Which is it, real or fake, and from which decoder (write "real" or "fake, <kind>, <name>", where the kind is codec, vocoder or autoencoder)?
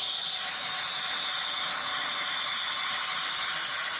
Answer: real